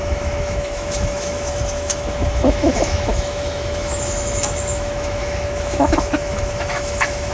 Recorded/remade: remade